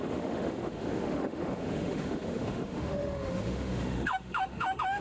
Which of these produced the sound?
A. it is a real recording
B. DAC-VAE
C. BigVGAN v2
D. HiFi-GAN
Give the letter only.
B